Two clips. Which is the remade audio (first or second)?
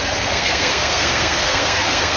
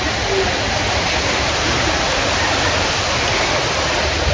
first